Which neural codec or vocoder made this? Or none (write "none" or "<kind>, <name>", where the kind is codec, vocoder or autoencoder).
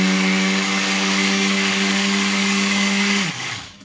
codec, DAC